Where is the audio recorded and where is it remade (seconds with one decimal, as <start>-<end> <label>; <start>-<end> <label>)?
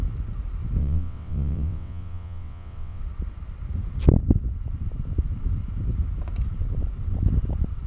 0.0-0.8 recorded; 0.8-3.0 remade; 3.0-7.9 recorded